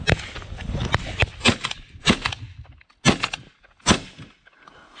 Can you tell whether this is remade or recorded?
recorded